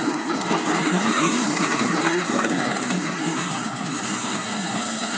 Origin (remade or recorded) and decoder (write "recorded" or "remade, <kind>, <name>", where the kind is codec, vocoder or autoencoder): remade, codec, SNAC